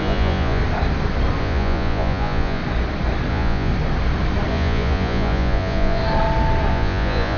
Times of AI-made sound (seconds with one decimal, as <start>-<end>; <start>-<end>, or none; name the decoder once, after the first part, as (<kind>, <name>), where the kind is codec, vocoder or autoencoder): 0.0-0.6 (vocoder, Vocos); 1.4-2.6; 3.3-3.7; 4.5-6.0; 6.7-7.4